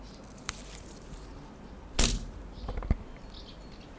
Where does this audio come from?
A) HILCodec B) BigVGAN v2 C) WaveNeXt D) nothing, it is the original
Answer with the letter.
D